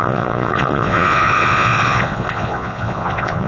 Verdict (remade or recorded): remade